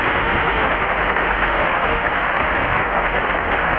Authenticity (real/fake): fake